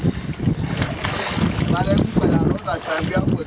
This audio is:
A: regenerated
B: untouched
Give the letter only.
B